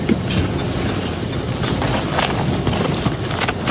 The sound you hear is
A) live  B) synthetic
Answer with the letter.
A